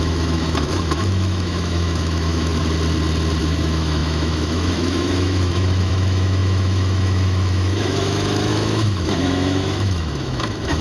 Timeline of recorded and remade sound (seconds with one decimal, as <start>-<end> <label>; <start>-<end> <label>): 0.0-2.6 remade; 2.6-3.4 recorded; 3.4-10.8 remade